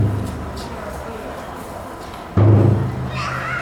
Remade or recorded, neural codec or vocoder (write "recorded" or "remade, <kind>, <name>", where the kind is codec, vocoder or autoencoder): recorded